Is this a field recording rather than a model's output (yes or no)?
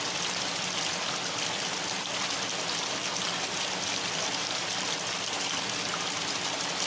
yes